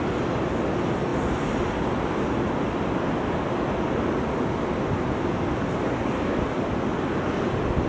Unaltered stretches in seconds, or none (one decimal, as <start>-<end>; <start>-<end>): 0.0-7.9